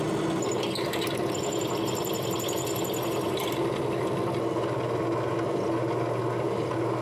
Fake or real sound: real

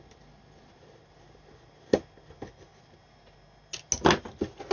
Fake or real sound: real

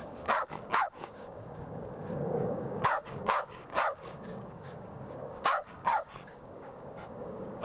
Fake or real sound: fake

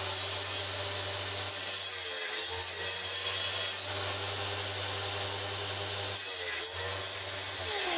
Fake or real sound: real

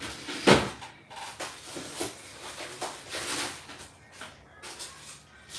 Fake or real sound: real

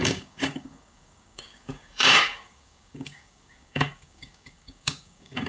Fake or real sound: fake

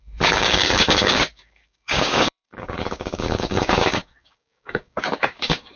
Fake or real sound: fake